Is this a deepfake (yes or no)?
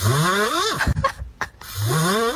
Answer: no